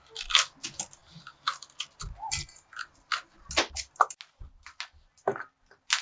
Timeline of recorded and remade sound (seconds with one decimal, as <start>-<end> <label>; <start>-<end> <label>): 0.0-6.0 recorded